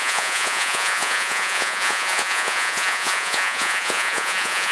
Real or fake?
fake